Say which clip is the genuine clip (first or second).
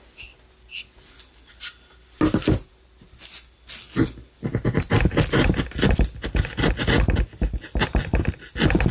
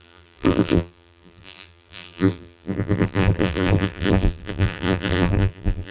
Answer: first